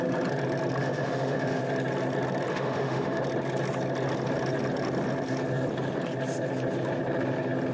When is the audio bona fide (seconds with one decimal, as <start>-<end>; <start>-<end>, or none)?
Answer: 0.0-0.8; 1.6-2.5; 3.2-7.7